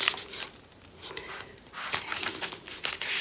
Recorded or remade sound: recorded